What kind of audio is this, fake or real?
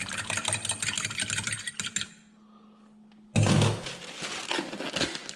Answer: real